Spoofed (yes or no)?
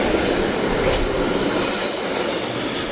no